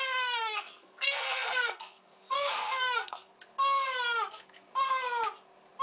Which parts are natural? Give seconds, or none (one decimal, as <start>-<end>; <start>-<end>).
3.3-4.3; 4.7-5.8